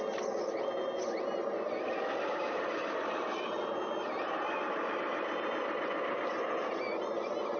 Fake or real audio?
fake